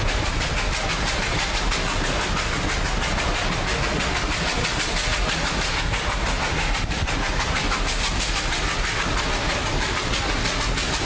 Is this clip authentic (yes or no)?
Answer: yes